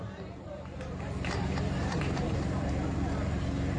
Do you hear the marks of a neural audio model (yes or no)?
yes